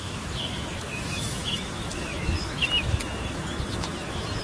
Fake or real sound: fake